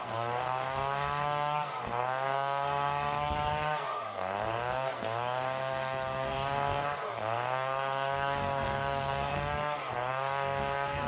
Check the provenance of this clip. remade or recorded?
remade